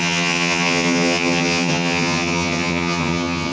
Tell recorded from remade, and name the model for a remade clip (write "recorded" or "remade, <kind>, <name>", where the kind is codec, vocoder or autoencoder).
remade, vocoder, HiFi-GAN